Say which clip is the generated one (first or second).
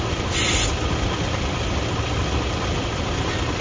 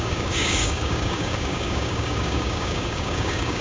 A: second